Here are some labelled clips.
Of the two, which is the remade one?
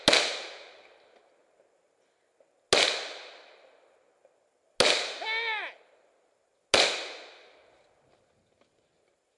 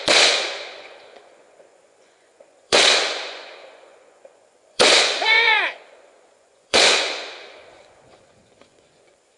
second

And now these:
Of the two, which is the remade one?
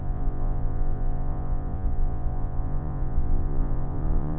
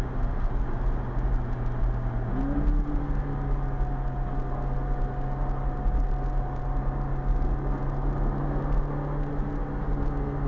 first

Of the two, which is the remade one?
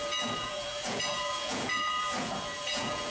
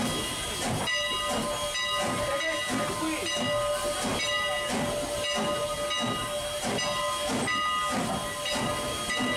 first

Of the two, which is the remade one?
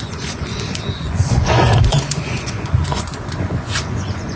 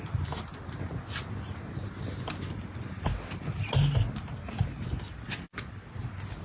first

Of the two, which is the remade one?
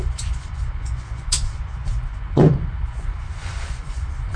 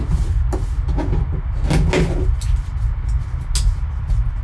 first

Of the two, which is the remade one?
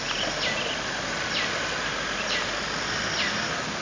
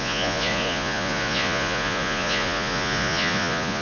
second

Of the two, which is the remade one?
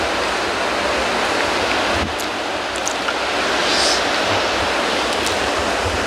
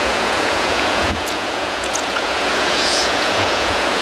second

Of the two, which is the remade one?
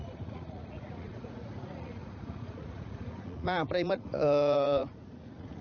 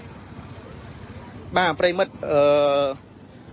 first